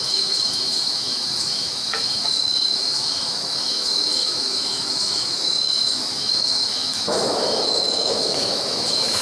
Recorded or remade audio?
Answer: remade